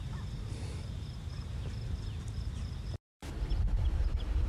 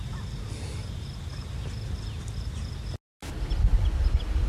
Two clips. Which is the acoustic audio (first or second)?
second